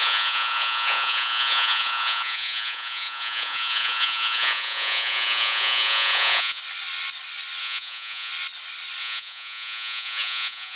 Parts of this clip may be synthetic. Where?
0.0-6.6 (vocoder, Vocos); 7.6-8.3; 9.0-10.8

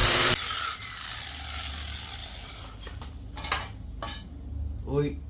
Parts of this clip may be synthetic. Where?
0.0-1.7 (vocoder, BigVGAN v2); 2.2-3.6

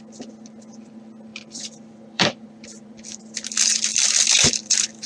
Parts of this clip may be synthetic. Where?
1.3-3.2 (vocoder, BigVGAN v2); 3.9-5.1

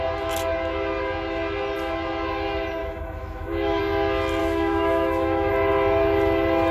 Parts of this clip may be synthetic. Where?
2.8-3.8 (autoencoder, DAC-VAE); 4.4-5.5